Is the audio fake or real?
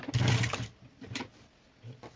real